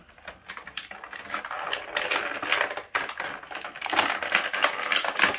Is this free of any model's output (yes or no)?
yes